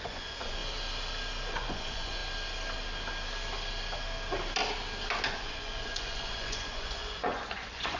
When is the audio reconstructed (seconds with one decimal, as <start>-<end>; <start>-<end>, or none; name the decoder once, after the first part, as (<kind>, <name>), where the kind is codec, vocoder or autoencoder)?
0.0-0.6 (vocoder, Vocos); 1.5-2.2; 5.3-8.0